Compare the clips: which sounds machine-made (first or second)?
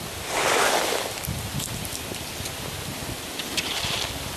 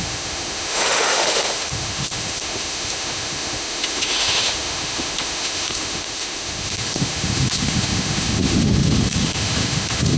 second